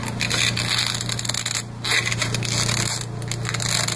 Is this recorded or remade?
recorded